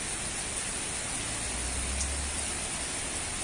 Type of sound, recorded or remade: recorded